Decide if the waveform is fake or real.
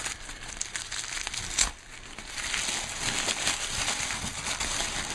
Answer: real